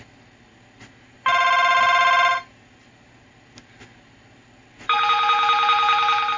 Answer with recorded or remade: recorded